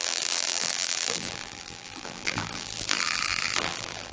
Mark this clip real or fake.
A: fake